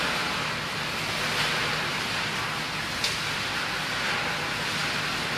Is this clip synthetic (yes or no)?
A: no